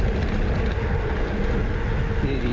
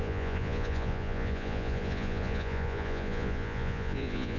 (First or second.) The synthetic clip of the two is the second